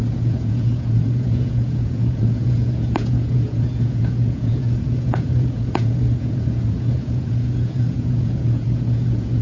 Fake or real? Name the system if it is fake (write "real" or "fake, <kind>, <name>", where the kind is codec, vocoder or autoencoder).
fake, vocoder, Vocos